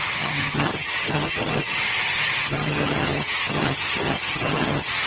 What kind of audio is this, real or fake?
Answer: fake